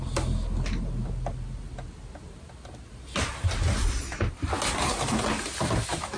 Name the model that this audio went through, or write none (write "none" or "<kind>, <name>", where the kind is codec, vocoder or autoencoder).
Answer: none